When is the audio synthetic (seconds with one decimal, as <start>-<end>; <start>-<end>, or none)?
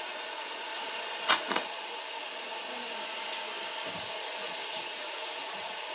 0.0-0.7; 1.3-2.3; 4.0-5.9